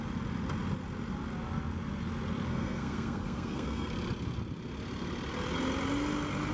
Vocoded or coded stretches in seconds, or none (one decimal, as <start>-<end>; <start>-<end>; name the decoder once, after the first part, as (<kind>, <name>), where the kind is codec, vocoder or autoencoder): 2.5-3.9 (codec, SNAC)